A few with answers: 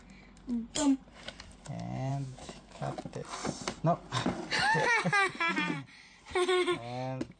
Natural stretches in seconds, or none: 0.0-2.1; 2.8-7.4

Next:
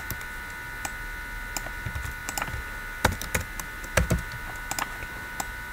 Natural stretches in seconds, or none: 0.0-5.7

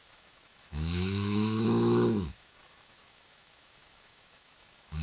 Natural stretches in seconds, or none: none